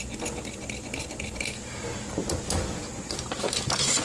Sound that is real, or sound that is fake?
real